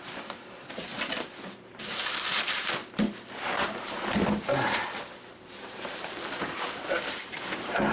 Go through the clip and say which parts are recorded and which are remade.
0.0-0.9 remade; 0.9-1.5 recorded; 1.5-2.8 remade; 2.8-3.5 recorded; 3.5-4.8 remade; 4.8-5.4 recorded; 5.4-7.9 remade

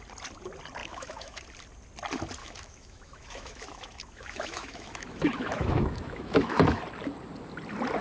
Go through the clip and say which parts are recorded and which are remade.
0.0-0.8 recorded; 0.8-1.4 remade; 1.4-2.4 recorded; 2.4-6.8 remade; 6.8-8.0 recorded

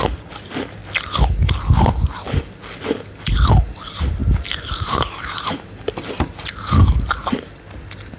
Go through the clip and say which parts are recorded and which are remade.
0.0-8.2 recorded

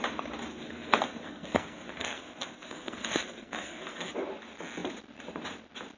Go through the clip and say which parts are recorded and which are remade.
0.0-0.5 recorded; 0.5-4.1 remade; 4.1-6.0 recorded

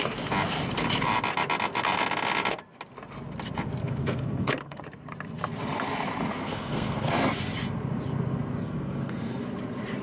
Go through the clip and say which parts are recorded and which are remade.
0.0-3.8 recorded; 3.8-4.8 remade; 4.8-6.4 recorded; 6.4-7.1 remade; 7.1-8.6 recorded; 8.6-9.4 remade; 9.4-10.0 recorded

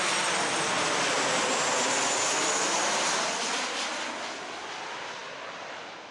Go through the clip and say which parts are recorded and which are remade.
0.0-6.1 recorded